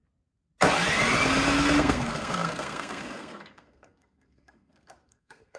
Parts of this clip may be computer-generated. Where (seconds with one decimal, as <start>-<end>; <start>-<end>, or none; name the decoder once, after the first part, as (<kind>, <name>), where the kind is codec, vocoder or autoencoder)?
1.8-5.6 (codec, SNAC)